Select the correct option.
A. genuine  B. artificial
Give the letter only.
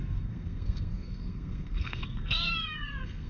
B